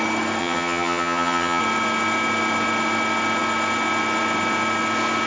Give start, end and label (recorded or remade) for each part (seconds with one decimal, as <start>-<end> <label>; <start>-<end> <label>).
0.0-0.4 recorded; 0.4-1.6 remade; 1.6-5.3 recorded